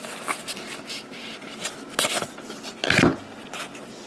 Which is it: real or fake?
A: real